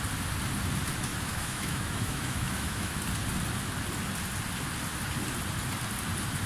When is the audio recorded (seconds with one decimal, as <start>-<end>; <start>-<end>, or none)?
0.0-1.1; 3.0-6.5